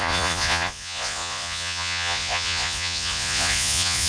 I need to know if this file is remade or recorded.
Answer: remade